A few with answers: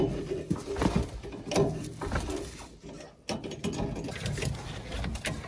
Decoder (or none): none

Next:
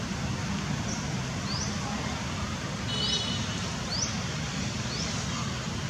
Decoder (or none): none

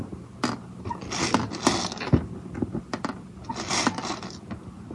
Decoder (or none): none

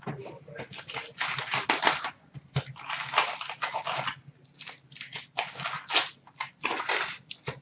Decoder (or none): none